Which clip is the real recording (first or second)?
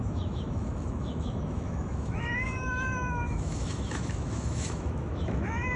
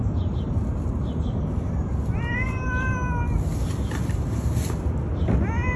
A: second